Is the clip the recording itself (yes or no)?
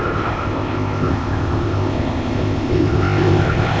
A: no